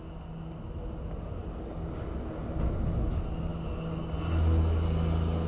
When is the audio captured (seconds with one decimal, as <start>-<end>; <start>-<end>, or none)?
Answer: 0.0-5.5